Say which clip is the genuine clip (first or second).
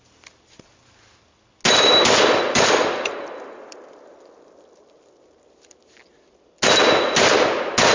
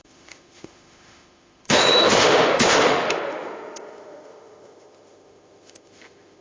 first